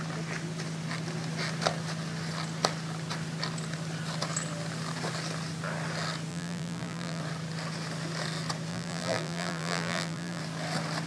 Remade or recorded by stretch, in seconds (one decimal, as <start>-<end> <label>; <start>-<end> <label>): 0.0-6.3 recorded; 6.3-7.2 remade; 7.2-8.7 recorded; 8.7-10.4 remade; 10.4-11.1 recorded